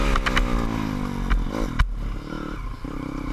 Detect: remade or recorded recorded